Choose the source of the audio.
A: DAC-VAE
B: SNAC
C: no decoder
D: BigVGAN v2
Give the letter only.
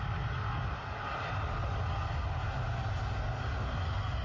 C